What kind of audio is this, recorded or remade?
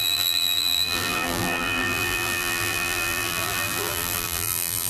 remade